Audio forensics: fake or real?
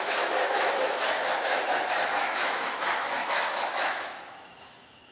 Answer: fake